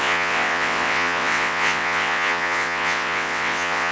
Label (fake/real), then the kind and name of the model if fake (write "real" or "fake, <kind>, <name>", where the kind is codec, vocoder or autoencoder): fake, vocoder, WaveNeXt